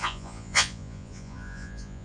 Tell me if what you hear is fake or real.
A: fake